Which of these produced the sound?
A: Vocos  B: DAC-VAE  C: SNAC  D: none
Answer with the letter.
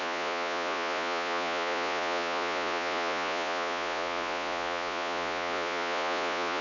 A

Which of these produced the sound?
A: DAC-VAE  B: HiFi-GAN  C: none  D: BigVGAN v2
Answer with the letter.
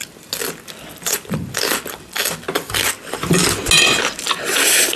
C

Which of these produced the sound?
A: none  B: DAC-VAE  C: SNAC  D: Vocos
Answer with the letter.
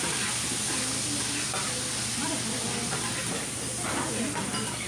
A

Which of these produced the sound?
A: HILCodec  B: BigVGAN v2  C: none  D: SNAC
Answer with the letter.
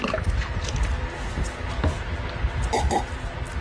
C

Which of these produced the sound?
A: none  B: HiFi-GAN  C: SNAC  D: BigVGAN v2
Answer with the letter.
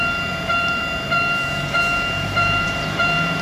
D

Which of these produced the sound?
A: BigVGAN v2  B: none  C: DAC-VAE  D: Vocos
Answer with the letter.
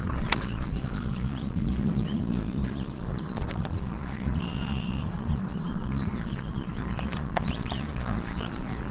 D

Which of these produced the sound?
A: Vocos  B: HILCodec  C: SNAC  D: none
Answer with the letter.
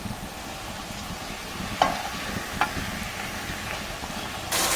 D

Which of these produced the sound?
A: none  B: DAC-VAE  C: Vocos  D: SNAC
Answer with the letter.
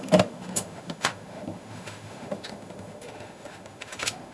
B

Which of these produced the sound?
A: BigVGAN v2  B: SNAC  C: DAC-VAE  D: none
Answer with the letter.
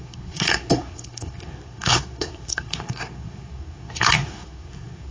B